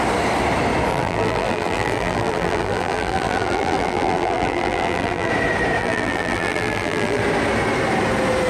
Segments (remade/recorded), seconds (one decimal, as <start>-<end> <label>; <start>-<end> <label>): 0.0-0.9 recorded; 0.9-5.3 remade; 5.3-5.8 recorded; 5.8-7.2 remade; 7.2-8.5 recorded